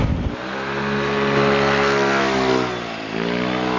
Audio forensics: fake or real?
real